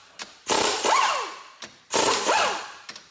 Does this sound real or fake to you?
real